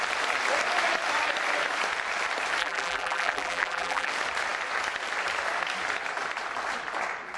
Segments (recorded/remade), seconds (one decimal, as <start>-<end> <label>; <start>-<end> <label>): 0.0-2.6 recorded; 2.6-4.1 remade; 4.1-7.4 recorded